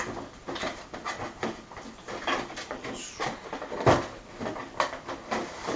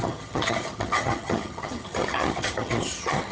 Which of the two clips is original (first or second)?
first